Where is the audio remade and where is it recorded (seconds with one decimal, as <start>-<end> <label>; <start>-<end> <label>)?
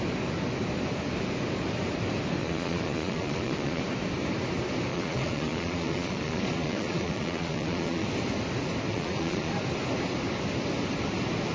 0.0-2.4 recorded; 2.4-3.8 remade; 3.8-4.9 recorded; 4.9-8.1 remade; 8.1-8.9 recorded; 8.9-9.5 remade; 9.5-11.5 recorded